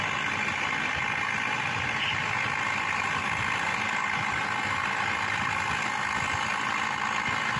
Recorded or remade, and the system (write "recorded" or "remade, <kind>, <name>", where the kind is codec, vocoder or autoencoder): recorded